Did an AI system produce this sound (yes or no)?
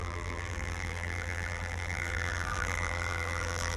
yes